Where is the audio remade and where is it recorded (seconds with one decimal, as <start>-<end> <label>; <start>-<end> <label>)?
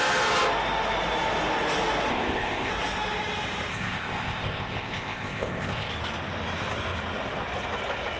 0.0-2.1 recorded; 2.1-2.7 remade; 2.7-3.7 recorded; 3.7-5.9 remade; 5.9-8.2 recorded